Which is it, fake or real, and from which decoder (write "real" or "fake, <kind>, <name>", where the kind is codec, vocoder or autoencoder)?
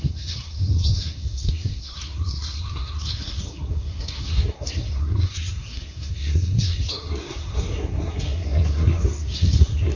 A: fake, codec, SNAC